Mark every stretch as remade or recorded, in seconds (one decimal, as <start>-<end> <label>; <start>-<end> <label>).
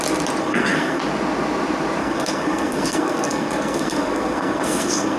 0.0-0.4 recorded; 0.4-1.0 remade; 1.0-2.0 recorded; 2.0-5.2 remade